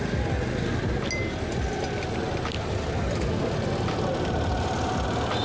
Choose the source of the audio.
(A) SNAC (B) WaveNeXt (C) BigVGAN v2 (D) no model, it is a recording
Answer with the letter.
D